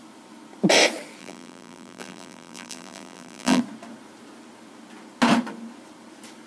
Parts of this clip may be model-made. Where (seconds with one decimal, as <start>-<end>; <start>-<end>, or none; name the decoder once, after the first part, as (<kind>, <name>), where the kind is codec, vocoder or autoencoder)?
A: 1.2-3.6 (vocoder, BigVGAN v2)